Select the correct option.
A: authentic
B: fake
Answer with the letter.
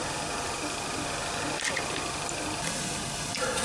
A